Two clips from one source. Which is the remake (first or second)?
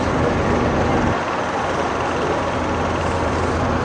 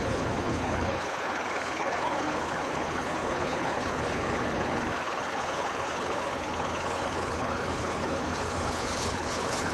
second